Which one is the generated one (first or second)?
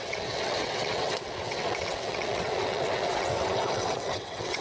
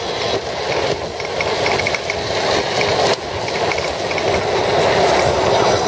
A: first